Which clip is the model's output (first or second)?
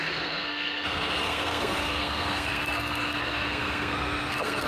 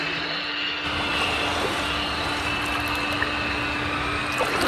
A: first